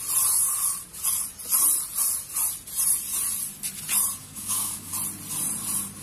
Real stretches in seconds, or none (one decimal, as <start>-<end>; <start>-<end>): 0.0-4.2; 4.9-6.0